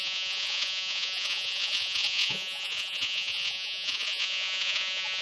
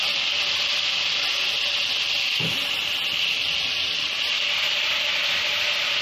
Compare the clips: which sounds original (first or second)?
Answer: second